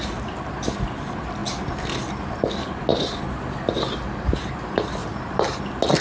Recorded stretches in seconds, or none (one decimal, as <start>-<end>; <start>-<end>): 0.0-5.0; 5.6-6.0